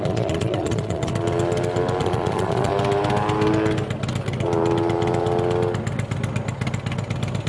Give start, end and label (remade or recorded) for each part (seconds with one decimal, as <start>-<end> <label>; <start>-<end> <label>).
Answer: 0.0-1.1 remade; 1.1-2.0 recorded; 2.0-2.7 remade; 2.7-7.5 recorded